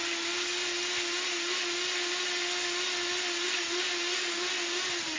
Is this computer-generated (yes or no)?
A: no